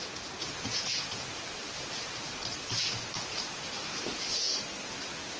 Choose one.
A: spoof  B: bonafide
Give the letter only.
B